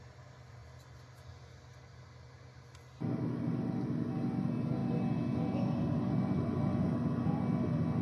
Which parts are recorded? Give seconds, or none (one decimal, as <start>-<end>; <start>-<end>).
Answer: 0.0-8.0